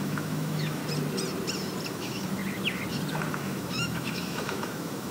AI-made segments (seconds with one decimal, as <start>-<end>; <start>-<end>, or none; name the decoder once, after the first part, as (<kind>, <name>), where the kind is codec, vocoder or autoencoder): 0.0-0.8 (autoencoder, DAC-VAE); 1.9-2.4; 3.3-5.1